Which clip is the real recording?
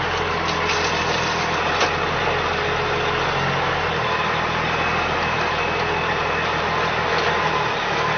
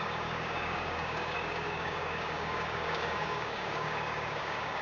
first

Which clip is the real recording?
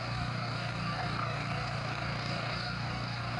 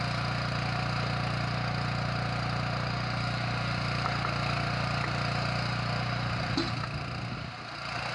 second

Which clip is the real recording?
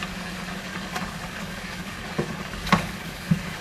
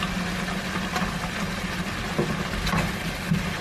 second